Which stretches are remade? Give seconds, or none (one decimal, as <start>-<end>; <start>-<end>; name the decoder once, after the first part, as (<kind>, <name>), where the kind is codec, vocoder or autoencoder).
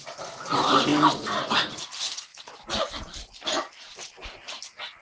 none